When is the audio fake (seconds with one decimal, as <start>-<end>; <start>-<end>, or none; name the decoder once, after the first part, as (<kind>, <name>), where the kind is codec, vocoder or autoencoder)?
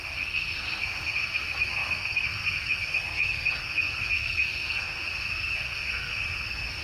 0.0-6.8 (codec, SNAC)